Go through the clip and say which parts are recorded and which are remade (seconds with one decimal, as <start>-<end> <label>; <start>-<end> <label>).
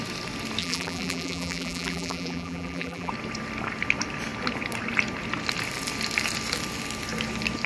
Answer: 0.0-0.6 recorded; 0.6-3.1 remade; 3.1-7.7 recorded